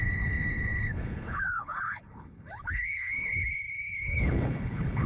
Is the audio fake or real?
fake